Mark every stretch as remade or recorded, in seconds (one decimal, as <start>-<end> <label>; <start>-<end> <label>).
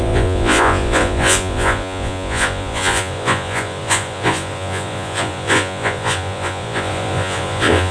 0.0-7.9 remade